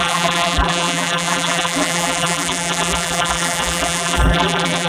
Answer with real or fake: fake